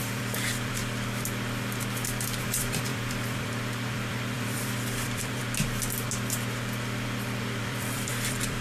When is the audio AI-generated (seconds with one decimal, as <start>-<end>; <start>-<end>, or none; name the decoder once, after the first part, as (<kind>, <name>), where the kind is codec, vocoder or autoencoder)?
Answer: 0.0-0.8 (vocoder, BigVGAN v2); 2.4-5.4; 7.6-8.6